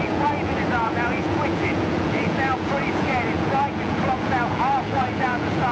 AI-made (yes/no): yes